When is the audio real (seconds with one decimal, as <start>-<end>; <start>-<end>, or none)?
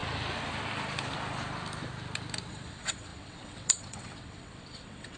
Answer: 0.0-2.5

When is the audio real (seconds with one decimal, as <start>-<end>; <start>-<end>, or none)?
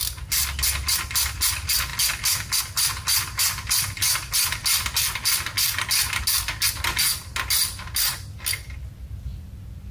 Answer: 0.0-9.9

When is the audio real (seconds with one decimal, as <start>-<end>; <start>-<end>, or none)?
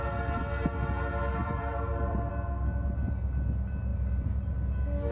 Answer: 0.0-1.4; 2.3-3.9; 4.5-5.1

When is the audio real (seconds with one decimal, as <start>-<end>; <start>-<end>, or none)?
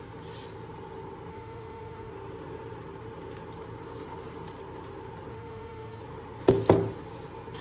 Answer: 0.0-1.3; 2.1-5.3; 6.0-7.6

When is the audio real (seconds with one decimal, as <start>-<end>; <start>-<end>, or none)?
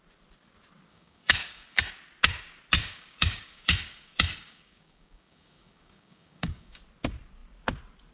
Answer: 0.0-0.9; 1.9-2.8; 6.8-8.1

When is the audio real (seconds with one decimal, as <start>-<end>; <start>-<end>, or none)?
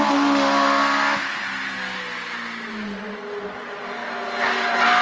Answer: 0.0-5.0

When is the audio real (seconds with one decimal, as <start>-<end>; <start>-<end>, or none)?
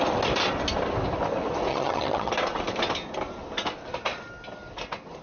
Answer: 0.0-1.7; 2.3-5.2